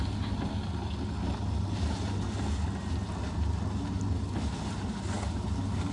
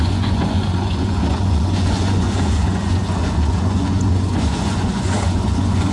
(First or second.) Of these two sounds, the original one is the first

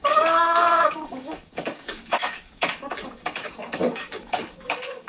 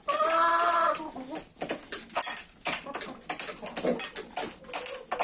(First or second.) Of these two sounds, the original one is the second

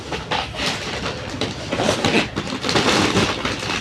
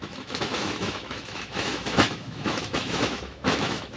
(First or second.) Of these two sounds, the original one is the first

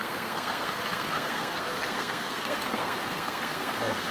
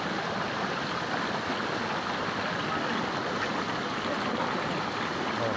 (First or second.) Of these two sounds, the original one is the second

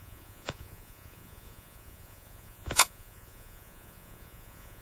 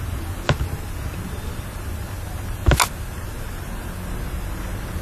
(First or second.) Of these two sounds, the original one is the second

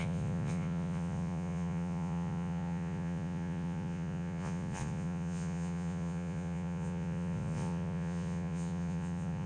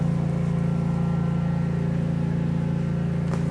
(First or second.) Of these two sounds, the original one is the second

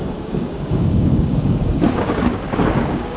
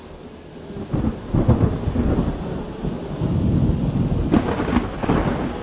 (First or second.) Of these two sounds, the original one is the second